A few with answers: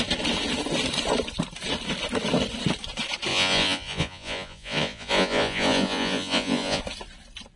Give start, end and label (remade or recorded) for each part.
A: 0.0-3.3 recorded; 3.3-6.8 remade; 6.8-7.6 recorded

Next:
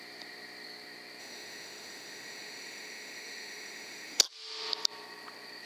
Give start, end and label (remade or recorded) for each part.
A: 0.0-1.2 recorded; 1.2-4.2 remade; 4.2-5.7 recorded

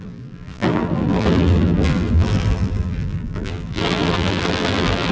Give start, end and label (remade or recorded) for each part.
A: 0.0-5.1 remade

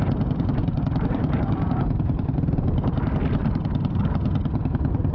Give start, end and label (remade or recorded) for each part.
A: 0.0-0.6 recorded; 0.6-2.5 remade; 2.5-3.4 recorded; 3.4-4.0 remade; 4.0-5.1 recorded

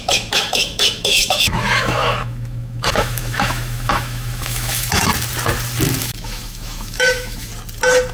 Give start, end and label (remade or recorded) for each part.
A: 0.0-5.0 remade; 5.0-6.0 recorded; 6.0-7.5 remade; 7.5-8.1 recorded

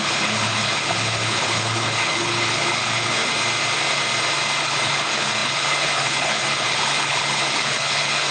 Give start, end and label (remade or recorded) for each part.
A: 0.0-3.2 remade; 3.2-4.6 recorded; 4.6-8.3 remade